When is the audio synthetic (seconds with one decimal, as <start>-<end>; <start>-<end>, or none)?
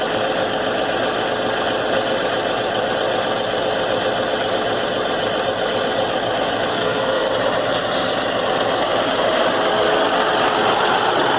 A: 6.7-7.3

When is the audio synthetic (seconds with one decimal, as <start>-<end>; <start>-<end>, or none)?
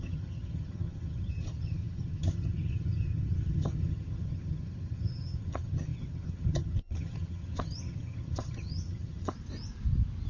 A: 0.0-9.3